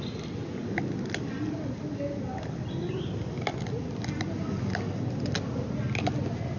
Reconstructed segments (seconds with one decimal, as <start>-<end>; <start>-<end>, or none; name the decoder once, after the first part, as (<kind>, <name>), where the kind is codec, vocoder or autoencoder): none